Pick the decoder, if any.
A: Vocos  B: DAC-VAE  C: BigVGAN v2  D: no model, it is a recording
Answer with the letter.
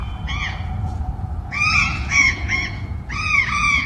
A